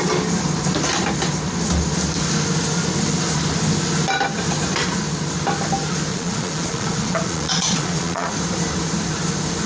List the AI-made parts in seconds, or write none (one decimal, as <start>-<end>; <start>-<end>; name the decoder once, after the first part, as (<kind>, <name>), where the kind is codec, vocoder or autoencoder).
6.1-8.3 (vocoder, Vocos)